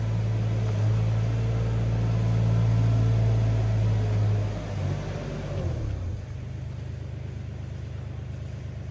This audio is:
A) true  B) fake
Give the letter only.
A